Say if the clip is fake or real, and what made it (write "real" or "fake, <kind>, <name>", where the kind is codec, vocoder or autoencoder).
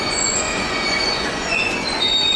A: fake, vocoder, Vocos